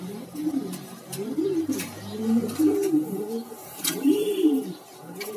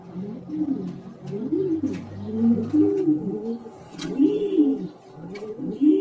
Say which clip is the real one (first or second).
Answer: second